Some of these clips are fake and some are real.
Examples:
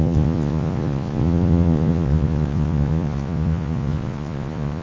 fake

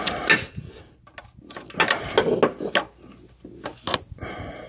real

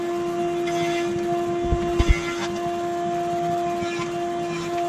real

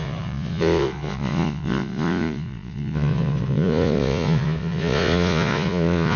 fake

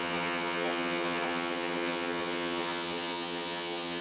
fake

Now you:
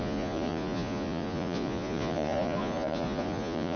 fake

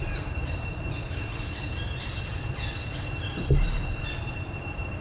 real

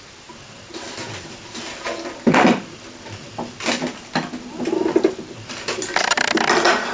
real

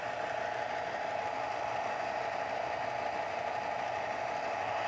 real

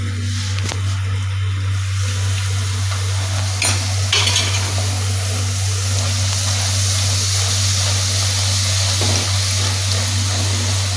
real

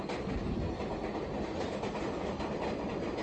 real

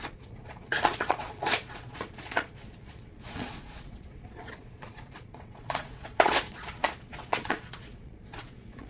fake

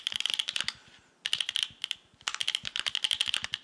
real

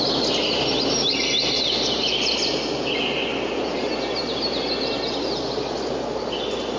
real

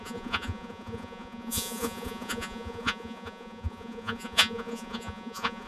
fake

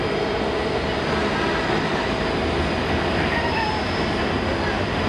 real